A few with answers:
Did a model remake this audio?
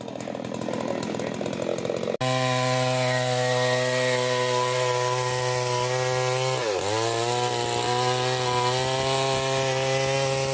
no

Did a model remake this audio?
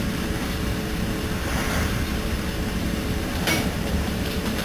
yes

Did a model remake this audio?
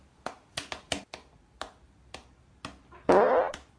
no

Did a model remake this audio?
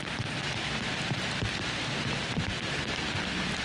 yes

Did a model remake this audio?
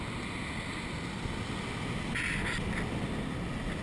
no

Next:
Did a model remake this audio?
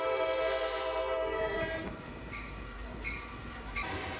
yes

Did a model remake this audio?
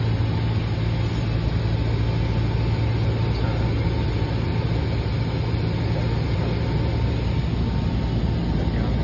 no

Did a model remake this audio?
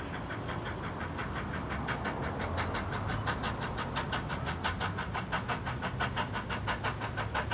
no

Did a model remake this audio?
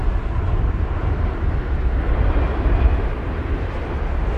no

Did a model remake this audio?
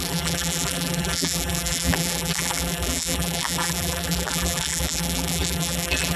yes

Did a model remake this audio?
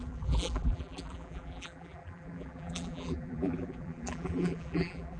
yes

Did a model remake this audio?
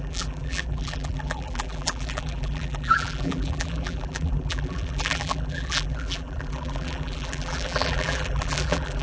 yes